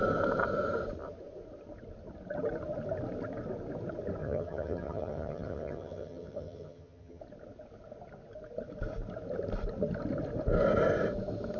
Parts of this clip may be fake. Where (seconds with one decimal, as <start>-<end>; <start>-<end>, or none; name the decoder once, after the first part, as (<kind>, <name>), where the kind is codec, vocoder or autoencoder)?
4.2-7.2 (vocoder, HiFi-GAN)